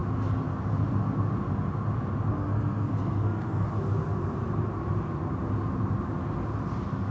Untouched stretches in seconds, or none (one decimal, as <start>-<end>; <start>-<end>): 0.0-2.3; 3.7-7.1